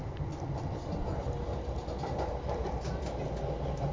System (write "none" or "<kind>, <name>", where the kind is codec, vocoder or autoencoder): none